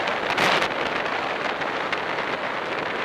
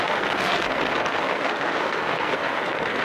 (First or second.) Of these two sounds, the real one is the first